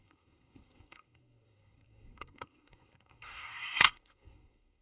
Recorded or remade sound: remade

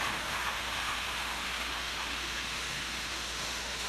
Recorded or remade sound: remade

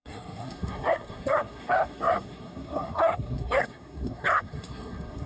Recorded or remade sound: remade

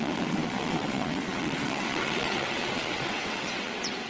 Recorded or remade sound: remade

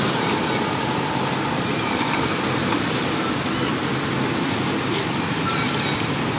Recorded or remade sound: recorded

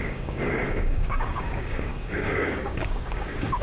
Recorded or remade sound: remade